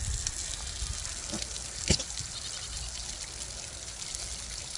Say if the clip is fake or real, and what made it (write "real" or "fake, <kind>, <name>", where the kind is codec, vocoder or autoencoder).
real